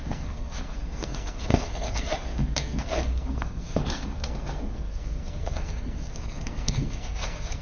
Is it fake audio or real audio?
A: fake